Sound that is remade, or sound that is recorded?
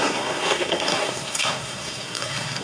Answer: remade